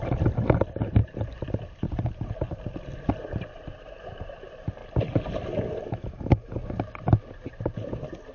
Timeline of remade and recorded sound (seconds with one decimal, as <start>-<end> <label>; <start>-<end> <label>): 0.0-4.8 remade; 4.8-5.9 recorded; 5.9-6.6 remade; 6.6-7.5 recorded; 7.5-8.3 remade